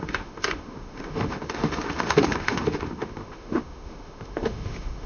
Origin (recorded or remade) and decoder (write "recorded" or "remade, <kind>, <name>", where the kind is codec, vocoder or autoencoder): remade, autoencoder, DAC-VAE